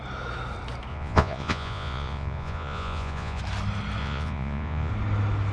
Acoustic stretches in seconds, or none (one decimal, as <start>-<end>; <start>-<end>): 0.0-0.9; 3.4-4.0; 4.9-5.5